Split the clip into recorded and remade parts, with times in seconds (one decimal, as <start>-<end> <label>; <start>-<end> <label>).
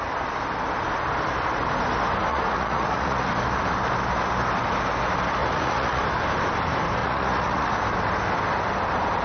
0.0-2.3 recorded; 2.3-3.3 remade; 3.3-5.4 recorded; 5.4-6.0 remade; 6.0-7.0 recorded; 7.0-7.7 remade; 7.7-9.2 recorded